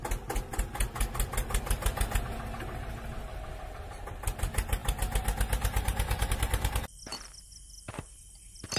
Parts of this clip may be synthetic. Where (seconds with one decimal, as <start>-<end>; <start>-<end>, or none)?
4.8-6.3; 7.1-8.8